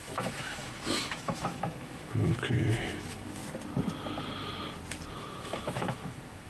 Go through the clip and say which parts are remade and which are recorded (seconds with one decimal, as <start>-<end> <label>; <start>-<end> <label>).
0.0-3.4 remade; 3.4-5.1 recorded; 5.1-6.5 remade